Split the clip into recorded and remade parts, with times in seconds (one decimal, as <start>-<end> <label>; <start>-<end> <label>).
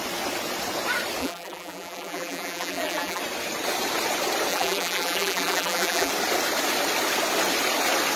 0.0-1.2 recorded; 1.2-3.2 remade; 3.2-4.5 recorded; 4.5-6.1 remade; 6.1-8.2 recorded